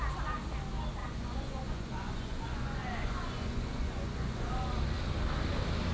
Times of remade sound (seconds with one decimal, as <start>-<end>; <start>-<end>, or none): 1.0-4.5